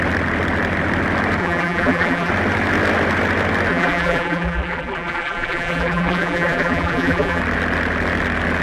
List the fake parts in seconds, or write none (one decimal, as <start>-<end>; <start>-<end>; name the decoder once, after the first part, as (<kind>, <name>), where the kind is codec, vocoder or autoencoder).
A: 1.4-2.3 (vocoder, BigVGAN v2); 3.7-7.4